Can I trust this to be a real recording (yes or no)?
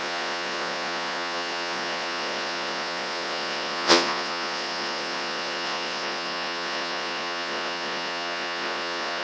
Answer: no